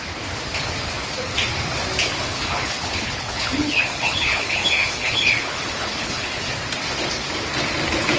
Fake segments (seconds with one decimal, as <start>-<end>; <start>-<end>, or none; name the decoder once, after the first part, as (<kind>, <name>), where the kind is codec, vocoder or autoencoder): 2.0-6.4 (codec, HILCodec)